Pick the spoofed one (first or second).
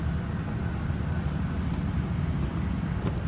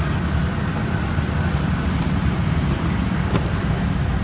second